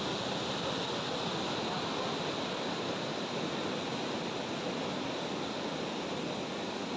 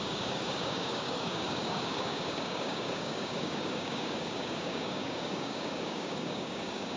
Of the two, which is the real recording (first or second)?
first